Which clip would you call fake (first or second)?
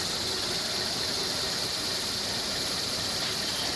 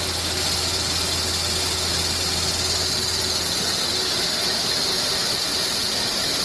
first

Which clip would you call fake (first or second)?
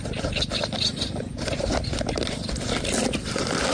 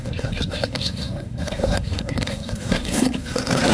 second